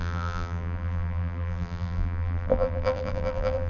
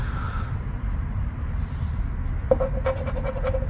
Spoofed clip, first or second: first